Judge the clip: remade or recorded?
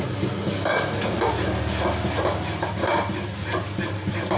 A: recorded